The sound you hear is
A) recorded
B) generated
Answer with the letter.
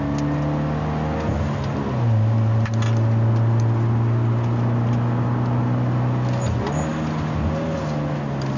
A